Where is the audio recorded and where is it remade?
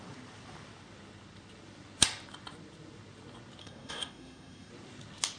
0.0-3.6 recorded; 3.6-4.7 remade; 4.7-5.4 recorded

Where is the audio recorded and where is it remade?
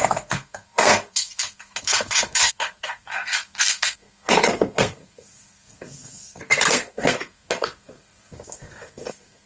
0.0-9.5 remade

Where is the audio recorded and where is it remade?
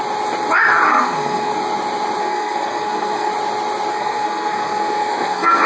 0.0-0.9 recorded; 0.9-1.5 remade; 1.5-2.2 recorded; 2.2-3.3 remade; 3.3-3.9 recorded; 3.9-5.7 remade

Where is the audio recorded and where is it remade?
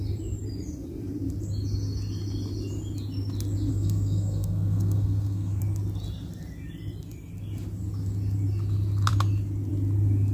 0.0-3.7 recorded; 3.7-5.6 remade; 5.6-10.3 recorded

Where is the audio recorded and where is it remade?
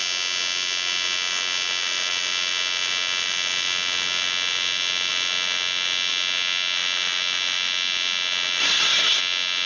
0.0-8.6 recorded; 8.6-9.2 remade; 9.2-9.7 recorded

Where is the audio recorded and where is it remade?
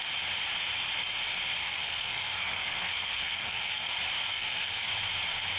0.0-1.6 recorded; 1.6-3.9 remade; 3.9-4.3 recorded; 4.3-4.9 remade; 4.9-5.6 recorded